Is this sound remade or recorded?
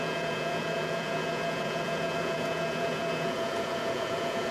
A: remade